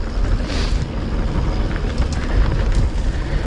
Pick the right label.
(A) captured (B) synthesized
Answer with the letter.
A